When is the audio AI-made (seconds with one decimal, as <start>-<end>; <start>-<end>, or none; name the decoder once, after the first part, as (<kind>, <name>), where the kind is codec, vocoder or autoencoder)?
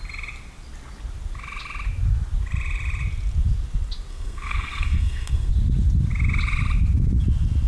4.1-5.5 (codec, SNAC)